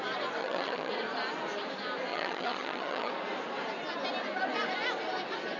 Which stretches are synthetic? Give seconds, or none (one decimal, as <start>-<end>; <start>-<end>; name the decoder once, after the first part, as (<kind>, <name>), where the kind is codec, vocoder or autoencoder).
0.4-0.9 (vocoder, HiFi-GAN); 2.1-3.1